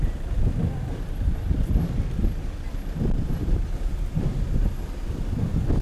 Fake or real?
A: fake